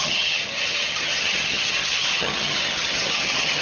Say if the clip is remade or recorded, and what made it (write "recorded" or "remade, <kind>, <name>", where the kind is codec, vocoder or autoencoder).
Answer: remade, vocoder, HiFi-GAN